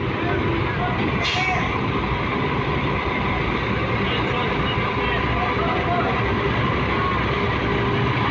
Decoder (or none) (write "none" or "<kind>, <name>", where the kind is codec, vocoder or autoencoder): none